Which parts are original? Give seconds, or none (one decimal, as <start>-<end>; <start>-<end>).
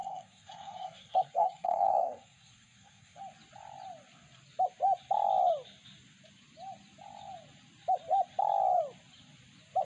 3.2-9.8